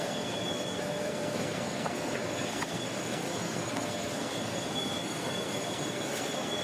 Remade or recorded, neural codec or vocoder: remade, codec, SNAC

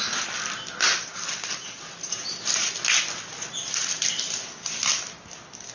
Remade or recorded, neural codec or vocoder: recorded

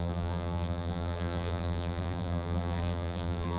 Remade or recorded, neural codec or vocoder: remade, vocoder, BigVGAN v2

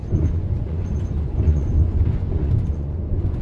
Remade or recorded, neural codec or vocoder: remade, vocoder, Vocos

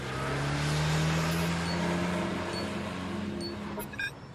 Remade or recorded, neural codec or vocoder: recorded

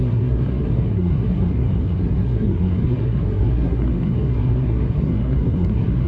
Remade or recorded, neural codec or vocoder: remade, codec, SNAC